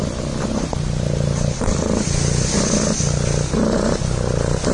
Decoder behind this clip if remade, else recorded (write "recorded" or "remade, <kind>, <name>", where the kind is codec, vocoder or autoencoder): recorded